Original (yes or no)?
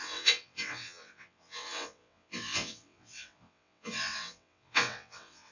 no